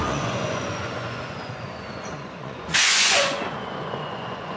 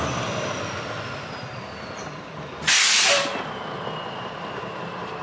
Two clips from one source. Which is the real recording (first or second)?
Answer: second